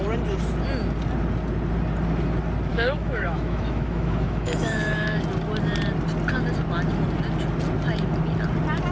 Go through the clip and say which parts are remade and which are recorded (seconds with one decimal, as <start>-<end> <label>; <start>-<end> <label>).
0.0-2.7 recorded; 2.7-5.2 remade; 5.2-8.9 recorded